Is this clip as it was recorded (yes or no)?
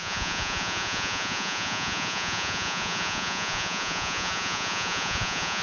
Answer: no